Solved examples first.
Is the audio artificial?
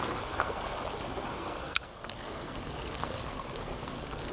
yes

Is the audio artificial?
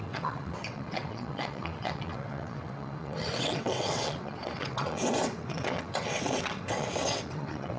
yes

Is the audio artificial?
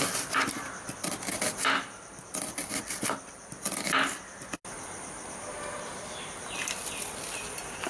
no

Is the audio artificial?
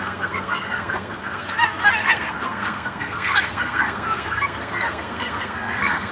yes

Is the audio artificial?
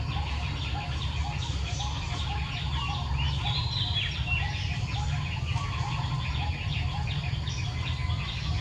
no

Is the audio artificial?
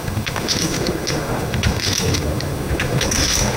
yes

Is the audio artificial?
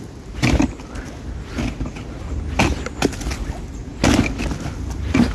no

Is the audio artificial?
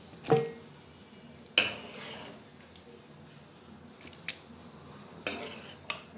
no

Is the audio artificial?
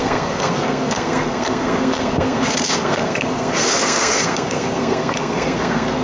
yes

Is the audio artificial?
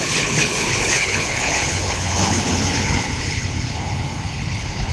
yes